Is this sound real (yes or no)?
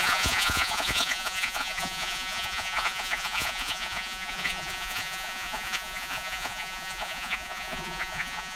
no